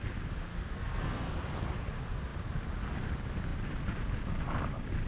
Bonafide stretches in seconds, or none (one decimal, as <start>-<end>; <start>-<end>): 0.0-0.5; 1.3-5.1